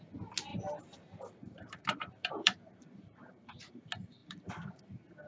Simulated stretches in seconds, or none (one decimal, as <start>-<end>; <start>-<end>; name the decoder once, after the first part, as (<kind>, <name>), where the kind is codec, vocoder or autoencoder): 0.5-3.7 (vocoder, BigVGAN v2); 4.2-4.8